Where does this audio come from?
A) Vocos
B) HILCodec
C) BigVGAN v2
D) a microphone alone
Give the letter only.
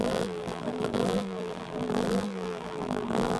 C